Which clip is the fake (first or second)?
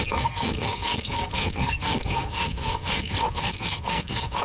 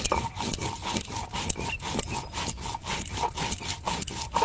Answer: first